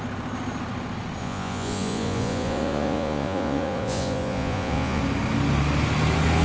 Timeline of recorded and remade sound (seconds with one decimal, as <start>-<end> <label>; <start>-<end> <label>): 0.0-1.2 recorded; 1.2-5.0 remade; 5.0-6.4 recorded